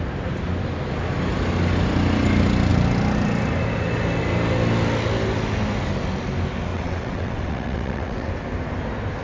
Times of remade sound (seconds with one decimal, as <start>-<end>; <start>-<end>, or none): 6.7-8.3